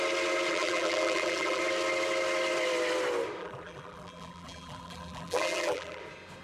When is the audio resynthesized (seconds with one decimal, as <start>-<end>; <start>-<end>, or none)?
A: 0.5-1.6; 3.4-6.0